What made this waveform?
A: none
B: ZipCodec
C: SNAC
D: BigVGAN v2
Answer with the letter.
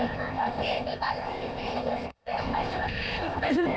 B